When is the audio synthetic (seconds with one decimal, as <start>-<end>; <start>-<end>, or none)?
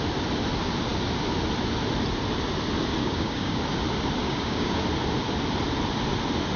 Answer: 3.0-3.6; 4.2-4.8